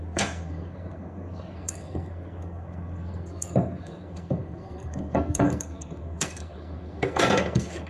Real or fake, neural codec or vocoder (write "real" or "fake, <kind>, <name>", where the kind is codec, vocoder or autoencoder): fake, codec, SNAC